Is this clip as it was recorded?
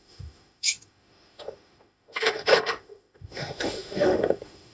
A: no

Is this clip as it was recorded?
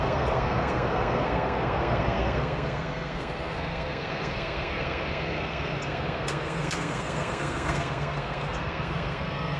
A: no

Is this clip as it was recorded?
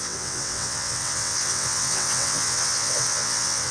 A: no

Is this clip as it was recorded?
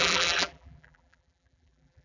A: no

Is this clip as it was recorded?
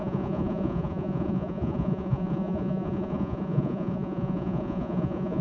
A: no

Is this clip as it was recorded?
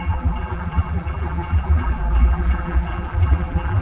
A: no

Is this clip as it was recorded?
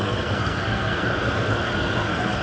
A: no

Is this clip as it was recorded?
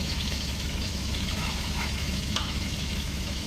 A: no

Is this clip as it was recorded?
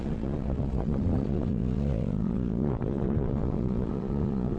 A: no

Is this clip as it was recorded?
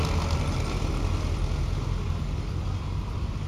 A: yes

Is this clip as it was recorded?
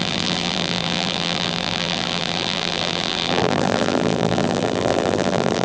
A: no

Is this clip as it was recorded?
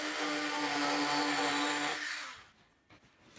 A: yes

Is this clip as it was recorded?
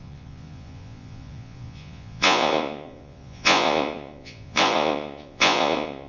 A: no